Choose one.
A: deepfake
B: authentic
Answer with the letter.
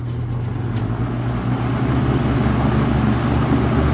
B